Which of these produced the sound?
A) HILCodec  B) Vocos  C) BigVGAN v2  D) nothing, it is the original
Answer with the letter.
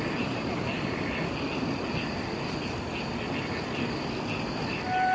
D